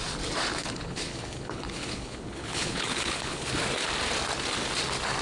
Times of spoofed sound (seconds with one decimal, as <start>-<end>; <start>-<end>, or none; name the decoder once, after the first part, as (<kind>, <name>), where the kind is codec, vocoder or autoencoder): 0.6-3.5 (codec, HILCodec)